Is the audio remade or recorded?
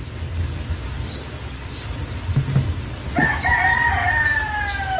recorded